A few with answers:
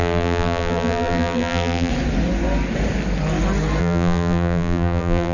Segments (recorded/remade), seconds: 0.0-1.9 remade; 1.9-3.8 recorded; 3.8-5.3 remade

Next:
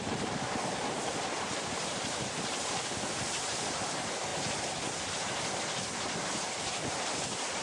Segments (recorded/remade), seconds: 0.0-7.6 recorded

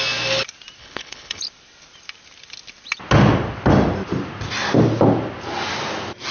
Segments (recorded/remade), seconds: 0.0-0.8 recorded; 0.8-1.4 remade; 1.4-6.3 recorded

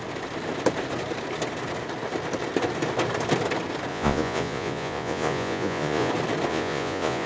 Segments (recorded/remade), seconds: 0.0-3.9 recorded; 3.9-6.1 remade; 6.1-6.5 recorded; 6.5-7.3 remade

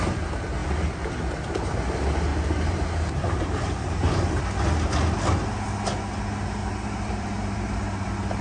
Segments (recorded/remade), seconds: 0.0-2.3 recorded; 2.3-4.4 remade; 4.4-6.6 recorded; 6.6-8.4 remade